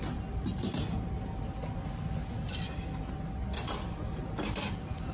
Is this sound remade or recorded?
recorded